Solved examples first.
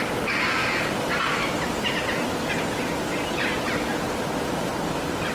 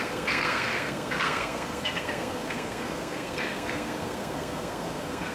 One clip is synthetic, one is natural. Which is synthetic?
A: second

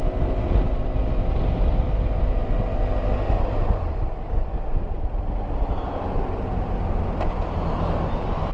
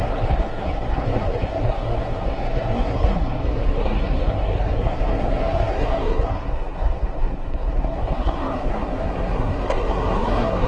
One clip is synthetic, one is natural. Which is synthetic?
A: second